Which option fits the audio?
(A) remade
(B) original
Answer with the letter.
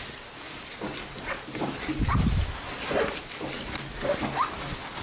B